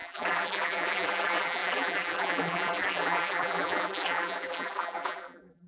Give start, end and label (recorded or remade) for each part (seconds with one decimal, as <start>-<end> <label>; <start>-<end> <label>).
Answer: 0.0-5.7 remade